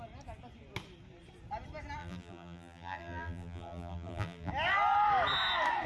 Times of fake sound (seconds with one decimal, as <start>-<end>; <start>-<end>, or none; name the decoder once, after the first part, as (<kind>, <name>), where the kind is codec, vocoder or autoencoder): 2.0-4.5 (vocoder, BigVGAN v2)